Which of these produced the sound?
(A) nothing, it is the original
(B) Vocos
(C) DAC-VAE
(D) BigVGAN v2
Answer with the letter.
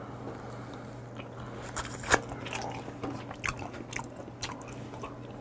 A